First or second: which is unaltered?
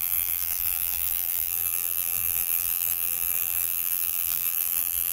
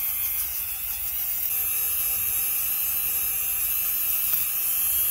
second